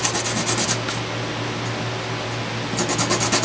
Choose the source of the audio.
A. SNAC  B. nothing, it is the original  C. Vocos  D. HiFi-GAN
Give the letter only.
B